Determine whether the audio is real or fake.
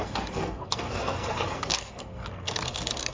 fake